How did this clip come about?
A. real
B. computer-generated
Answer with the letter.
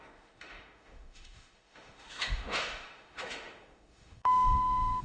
B